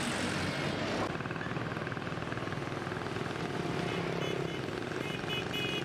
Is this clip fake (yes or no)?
no